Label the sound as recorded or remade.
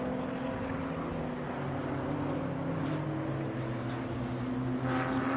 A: recorded